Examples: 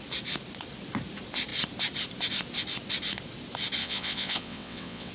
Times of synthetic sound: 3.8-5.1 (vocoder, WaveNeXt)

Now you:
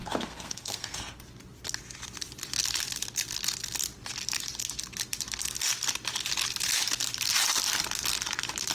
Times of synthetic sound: 0.0-1.2 (codec, SNAC)

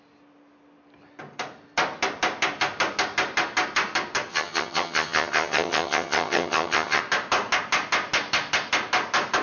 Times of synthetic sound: 4.3-7.0 (vocoder, HiFi-GAN)

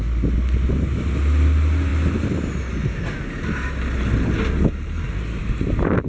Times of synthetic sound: none

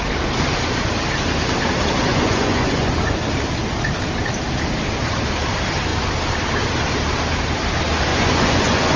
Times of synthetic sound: 2.1-2.9 (vocoder, Vocos); 8.1-9.0

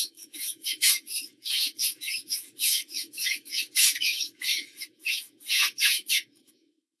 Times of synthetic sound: 0.0-7.0 (autoencoder, DAC-VAE)

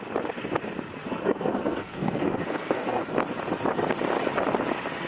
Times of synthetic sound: 1.0-3.0 (codec, SNAC)